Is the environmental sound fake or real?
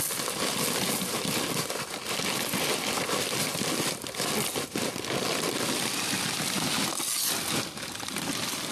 real